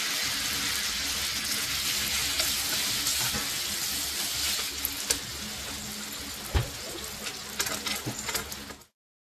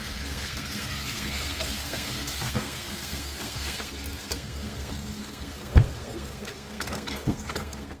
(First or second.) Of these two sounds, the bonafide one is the first